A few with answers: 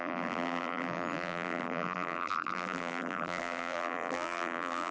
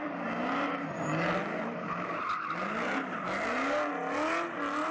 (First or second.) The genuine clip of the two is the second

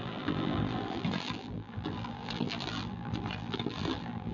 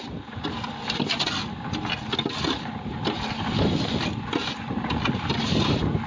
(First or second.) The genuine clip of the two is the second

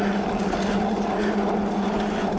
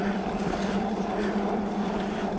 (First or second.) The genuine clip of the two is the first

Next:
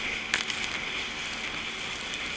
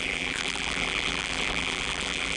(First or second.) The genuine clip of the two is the first